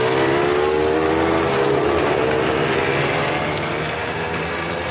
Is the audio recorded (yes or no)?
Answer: yes